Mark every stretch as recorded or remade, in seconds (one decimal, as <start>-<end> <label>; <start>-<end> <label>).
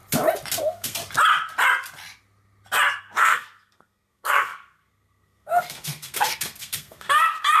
0.0-0.6 recorded; 0.6-1.0 remade; 1.0-3.0 recorded; 3.0-7.6 remade